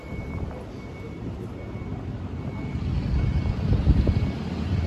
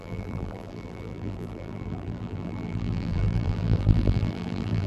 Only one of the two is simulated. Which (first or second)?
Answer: second